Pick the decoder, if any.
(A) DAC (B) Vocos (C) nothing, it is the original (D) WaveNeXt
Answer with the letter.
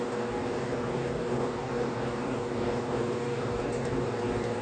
A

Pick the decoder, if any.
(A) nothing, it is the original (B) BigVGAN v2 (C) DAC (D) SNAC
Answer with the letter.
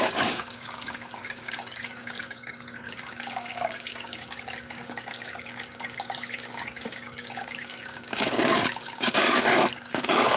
C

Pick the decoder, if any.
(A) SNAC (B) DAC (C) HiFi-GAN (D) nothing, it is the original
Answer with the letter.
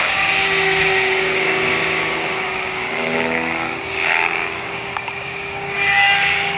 B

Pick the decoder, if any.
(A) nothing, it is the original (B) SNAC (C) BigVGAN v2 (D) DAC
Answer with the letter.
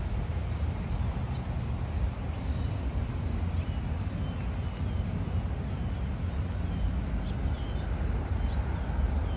A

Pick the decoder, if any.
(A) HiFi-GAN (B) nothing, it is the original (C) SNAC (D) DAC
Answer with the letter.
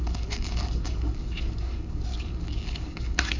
D